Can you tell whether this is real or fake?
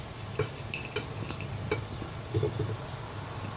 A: real